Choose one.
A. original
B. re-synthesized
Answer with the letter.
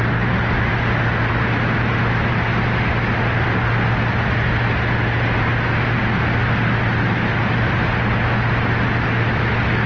A